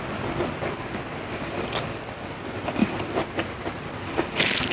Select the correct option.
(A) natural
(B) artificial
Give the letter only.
A